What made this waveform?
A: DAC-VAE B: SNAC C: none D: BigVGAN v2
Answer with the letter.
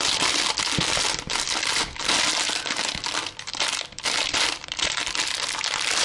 D